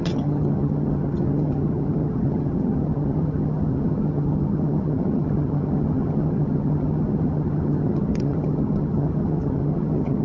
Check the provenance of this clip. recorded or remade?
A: remade